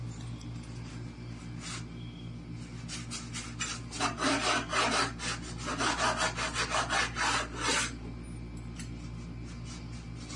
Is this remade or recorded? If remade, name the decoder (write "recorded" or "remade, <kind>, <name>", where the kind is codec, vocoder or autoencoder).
recorded